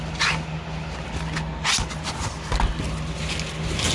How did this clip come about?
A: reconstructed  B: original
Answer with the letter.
B